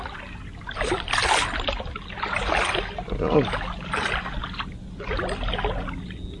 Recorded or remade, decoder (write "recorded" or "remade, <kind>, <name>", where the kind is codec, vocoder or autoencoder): recorded